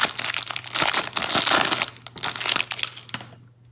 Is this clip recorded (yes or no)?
yes